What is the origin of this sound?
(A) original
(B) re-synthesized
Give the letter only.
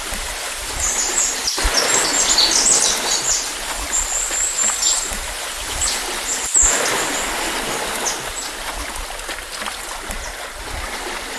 A